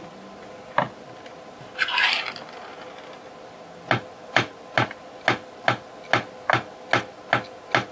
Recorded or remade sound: recorded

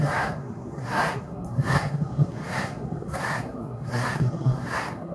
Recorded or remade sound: remade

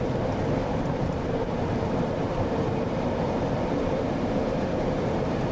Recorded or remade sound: remade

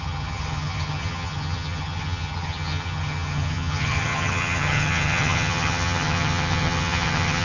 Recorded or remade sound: remade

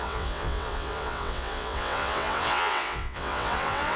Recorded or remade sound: remade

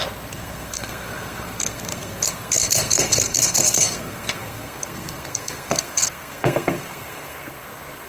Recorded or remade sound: remade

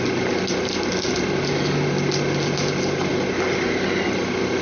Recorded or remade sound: recorded